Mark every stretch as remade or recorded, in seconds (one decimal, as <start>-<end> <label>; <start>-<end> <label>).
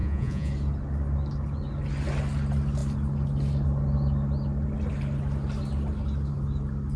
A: 0.0-0.5 remade; 0.5-7.0 recorded